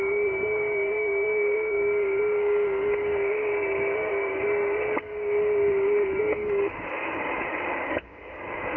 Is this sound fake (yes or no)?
yes